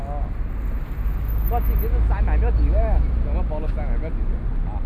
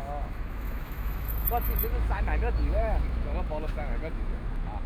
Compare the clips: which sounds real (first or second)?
first